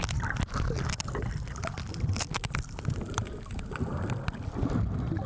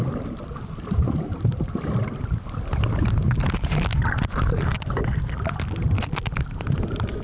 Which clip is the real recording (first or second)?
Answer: first